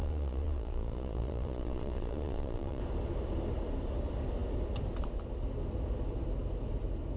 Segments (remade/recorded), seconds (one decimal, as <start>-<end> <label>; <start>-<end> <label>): 0.0-2.8 remade; 2.8-7.2 recorded